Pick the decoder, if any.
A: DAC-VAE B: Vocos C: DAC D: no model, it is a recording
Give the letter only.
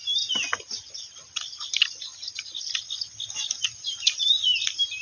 D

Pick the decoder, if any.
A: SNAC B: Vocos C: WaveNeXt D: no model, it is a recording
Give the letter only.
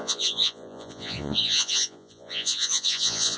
B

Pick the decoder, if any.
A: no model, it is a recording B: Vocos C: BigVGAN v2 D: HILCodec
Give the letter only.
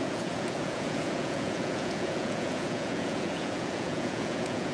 B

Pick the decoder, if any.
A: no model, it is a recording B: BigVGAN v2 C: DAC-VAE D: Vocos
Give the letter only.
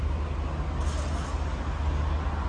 A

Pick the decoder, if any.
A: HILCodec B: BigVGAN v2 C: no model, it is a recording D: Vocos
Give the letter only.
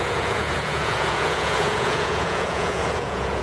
D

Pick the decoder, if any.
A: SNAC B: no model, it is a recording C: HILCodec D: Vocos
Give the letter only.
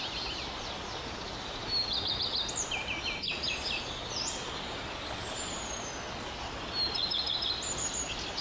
B